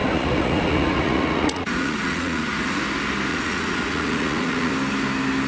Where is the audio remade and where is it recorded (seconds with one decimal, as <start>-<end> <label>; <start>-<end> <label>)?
0.0-2.8 remade; 2.8-3.3 recorded; 3.3-4.7 remade; 4.7-5.5 recorded